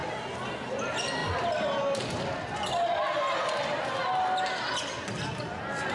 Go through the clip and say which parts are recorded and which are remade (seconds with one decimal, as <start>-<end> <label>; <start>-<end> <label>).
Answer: 0.0-5.9 recorded